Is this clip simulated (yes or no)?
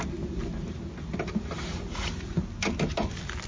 no